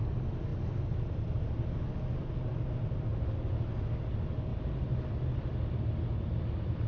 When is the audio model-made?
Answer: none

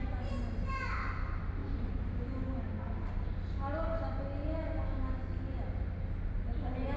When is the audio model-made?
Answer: none